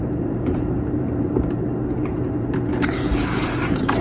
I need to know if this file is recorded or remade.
remade